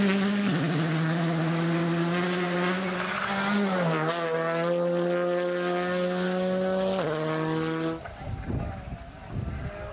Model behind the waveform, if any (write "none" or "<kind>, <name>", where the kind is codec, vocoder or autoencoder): none